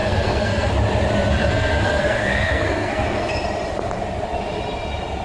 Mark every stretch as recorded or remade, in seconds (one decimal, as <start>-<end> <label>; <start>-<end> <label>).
0.0-0.7 remade; 0.7-1.3 recorded; 1.3-3.3 remade; 3.3-5.2 recorded